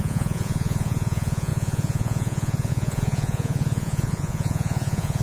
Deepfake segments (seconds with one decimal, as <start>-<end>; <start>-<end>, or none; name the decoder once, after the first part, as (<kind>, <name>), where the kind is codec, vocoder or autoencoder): 0.0-5.2 (vocoder, Vocos)